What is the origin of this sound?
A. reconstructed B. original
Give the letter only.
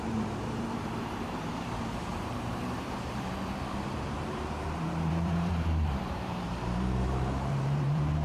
A